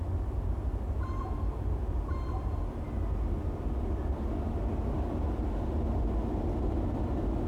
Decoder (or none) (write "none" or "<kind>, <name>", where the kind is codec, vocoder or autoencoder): none